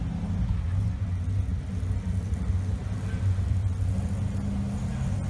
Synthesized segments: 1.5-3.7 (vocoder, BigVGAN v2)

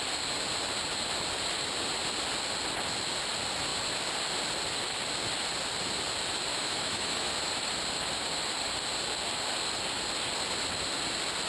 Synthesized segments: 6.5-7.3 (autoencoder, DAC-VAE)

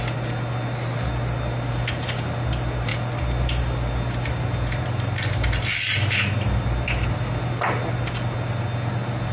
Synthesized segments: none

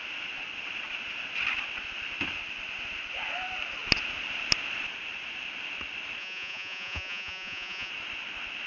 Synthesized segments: 6.2-7.9 (vocoder, Vocos)

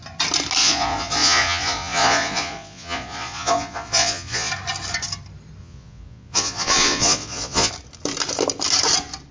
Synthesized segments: 0.6-4.5 (vocoder, Vocos); 5.6-7.7

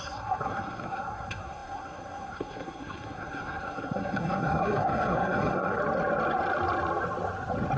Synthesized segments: 0.0-5.8 (codec, SNAC)